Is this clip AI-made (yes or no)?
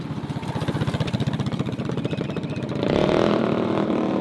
no